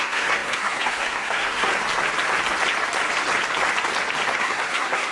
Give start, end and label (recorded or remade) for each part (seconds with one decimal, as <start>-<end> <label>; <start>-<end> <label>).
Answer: 0.0-1.7 remade; 1.7-4.4 recorded; 4.4-5.1 remade